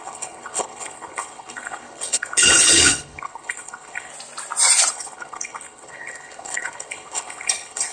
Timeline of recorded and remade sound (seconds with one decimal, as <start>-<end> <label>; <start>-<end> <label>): 0.0-4.1 remade; 4.1-4.9 recorded; 4.9-7.9 remade